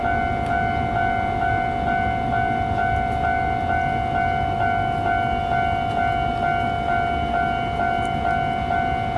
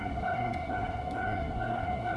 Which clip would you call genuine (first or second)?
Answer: first